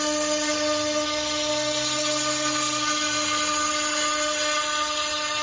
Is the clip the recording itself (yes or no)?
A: yes